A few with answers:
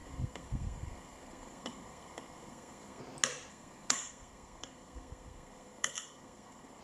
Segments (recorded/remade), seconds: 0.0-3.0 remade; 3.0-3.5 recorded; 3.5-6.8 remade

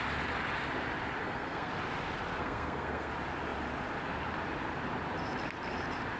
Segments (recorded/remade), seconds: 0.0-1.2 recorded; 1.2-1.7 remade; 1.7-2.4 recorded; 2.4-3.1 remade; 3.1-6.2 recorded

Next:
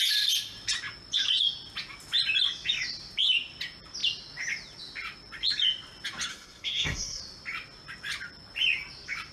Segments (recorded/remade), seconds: 0.0-6.3 recorded; 6.3-7.2 remade; 7.2-9.3 recorded

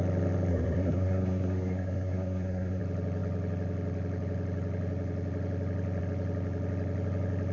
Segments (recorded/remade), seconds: 0.0-0.5 recorded; 0.5-2.8 remade; 2.8-7.5 recorded

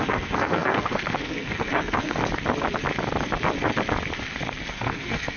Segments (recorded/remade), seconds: 0.0-2.2 remade; 2.2-4.7 recorded; 4.7-5.4 remade